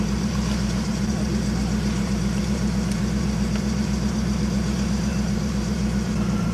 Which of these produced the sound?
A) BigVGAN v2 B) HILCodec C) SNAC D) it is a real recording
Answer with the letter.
A